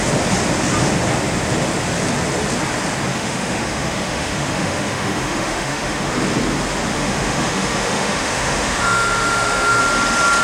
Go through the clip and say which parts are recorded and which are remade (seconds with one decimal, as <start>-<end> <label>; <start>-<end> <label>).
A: 0.0-3.1 recorded; 3.1-6.1 remade; 6.1-6.9 recorded; 6.9-9.8 remade; 9.8-10.4 recorded